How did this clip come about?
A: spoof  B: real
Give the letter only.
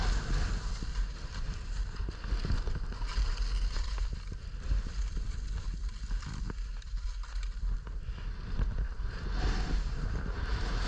B